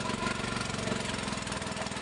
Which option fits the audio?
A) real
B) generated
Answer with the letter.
A